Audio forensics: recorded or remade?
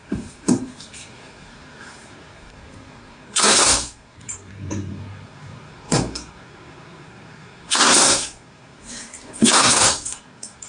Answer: remade